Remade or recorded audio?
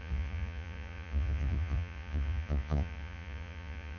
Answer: remade